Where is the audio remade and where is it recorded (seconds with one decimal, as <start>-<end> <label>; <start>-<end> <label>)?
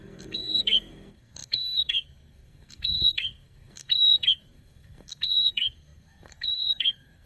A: 0.0-7.3 remade